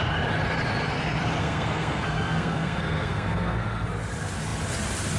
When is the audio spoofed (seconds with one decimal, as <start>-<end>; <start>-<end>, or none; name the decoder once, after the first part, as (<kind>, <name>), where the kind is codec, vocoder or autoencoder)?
1.4-3.9 (codec, SNAC)